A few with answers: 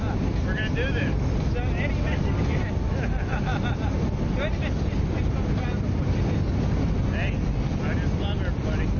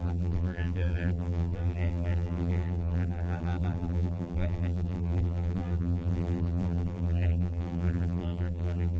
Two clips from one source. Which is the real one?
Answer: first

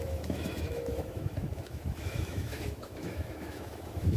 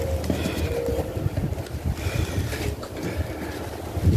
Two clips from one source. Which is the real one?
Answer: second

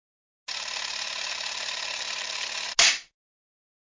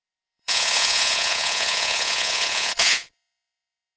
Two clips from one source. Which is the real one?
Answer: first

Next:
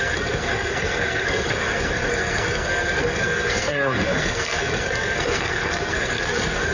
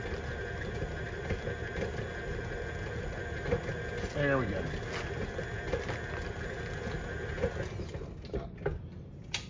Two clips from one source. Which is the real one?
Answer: second